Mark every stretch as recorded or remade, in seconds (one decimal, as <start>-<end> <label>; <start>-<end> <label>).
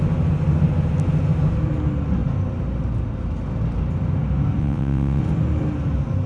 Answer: 0.0-4.6 recorded; 4.6-5.2 remade; 5.2-6.3 recorded